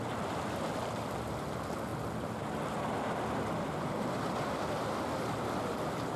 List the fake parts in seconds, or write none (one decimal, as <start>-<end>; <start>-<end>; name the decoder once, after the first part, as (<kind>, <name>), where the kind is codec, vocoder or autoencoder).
none